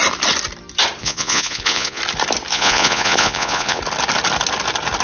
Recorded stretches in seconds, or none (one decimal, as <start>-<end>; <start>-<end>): 0.0-1.0; 2.0-2.5; 3.8-5.0